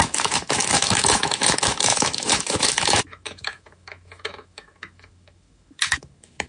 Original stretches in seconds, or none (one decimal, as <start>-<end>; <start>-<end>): none